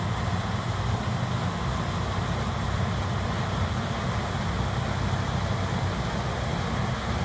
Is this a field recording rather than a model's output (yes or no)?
yes